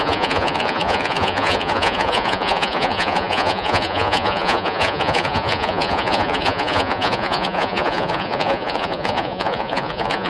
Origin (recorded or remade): remade